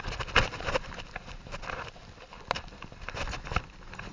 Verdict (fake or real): real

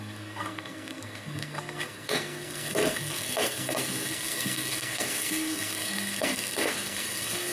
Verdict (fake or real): fake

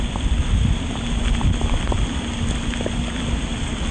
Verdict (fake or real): real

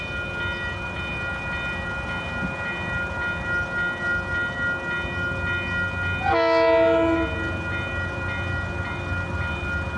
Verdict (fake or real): real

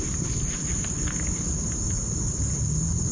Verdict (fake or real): real